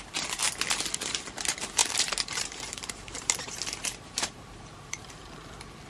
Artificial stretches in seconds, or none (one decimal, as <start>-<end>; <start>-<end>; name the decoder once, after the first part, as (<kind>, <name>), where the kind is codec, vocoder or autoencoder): 1.8-5.3 (vocoder, BigVGAN v2)